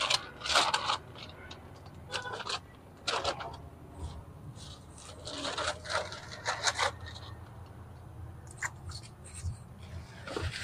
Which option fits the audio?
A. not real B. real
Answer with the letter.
B